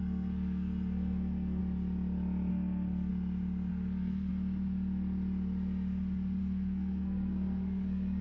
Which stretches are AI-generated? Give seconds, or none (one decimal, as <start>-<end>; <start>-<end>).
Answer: 0.0-1.6; 2.5-3.1; 3.7-4.3; 6.4-8.2